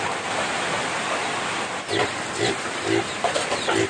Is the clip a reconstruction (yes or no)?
no